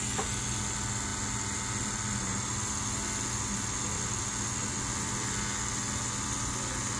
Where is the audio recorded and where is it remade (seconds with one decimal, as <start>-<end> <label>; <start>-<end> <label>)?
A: 0.0-7.0 recorded